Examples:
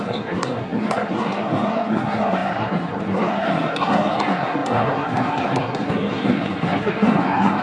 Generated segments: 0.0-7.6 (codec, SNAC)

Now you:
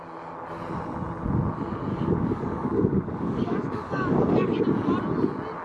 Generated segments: 1.9-4.6 (codec, DAC)

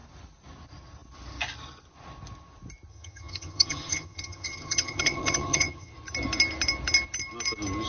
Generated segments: 2.9-5.9 (vocoder, HiFi-GAN)

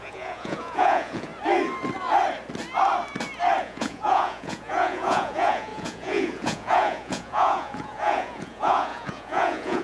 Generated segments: 0.0-1.3 (vocoder, Vocos); 3.6-9.8

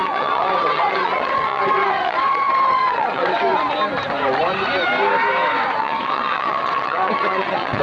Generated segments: 0.0-3.4 (vocoder, WaveNeXt); 5.8-7.8